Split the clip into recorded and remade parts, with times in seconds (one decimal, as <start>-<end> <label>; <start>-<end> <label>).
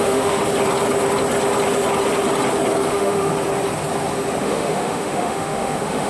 0.0-0.4 remade; 0.4-2.9 recorded; 2.9-3.3 remade; 3.3-4.4 recorded; 4.4-6.1 remade